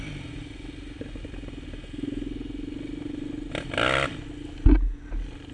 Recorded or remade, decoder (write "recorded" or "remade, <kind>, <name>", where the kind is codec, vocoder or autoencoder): recorded